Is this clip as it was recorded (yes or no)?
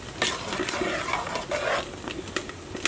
yes